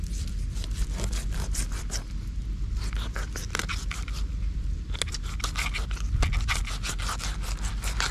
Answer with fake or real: real